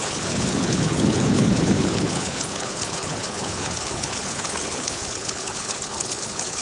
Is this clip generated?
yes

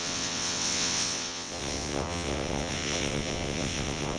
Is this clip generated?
yes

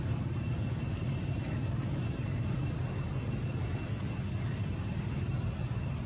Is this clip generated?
no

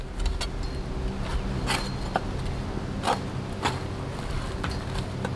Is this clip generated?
no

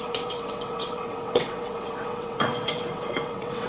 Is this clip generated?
yes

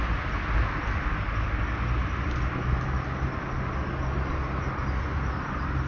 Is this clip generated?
no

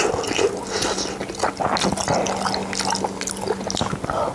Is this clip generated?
no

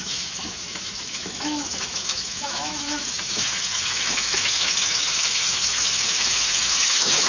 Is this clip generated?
yes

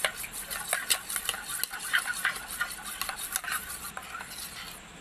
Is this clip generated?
no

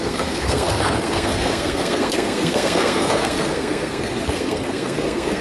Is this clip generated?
yes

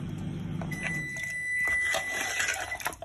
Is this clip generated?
no